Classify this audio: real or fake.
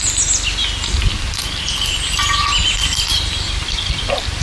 real